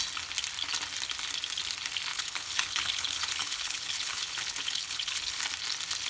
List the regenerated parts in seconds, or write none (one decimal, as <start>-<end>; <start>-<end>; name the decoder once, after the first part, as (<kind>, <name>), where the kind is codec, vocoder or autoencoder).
2.1-5.4 (codec, HILCodec)